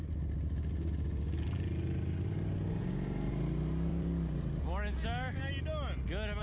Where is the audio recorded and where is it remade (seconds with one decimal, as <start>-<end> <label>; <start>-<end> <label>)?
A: 0.0-3.9 recorded; 3.9-4.6 remade; 4.6-6.4 recorded